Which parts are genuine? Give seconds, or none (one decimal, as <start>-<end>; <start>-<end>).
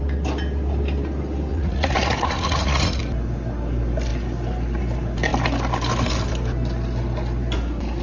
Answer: 0.0-1.5; 3.0-8.0